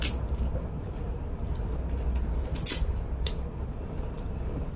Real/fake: real